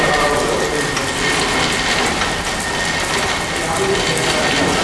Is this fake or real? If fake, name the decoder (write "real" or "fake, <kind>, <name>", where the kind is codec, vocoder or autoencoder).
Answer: real